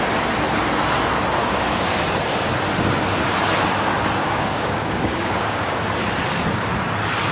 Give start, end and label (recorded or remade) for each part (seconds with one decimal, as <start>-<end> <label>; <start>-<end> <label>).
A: 0.0-1.4 recorded; 1.4-1.9 remade; 1.9-4.2 recorded; 4.2-5.8 remade; 5.8-7.3 recorded